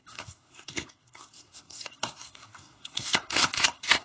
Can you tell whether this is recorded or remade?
remade